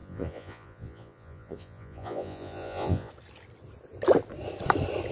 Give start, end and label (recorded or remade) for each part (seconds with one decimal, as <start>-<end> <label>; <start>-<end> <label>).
0.0-3.1 remade; 3.1-5.1 recorded